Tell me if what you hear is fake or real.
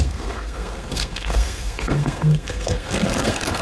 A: fake